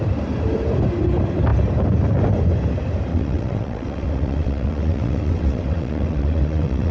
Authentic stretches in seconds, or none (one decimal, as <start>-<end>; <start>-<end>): 0.0-3.1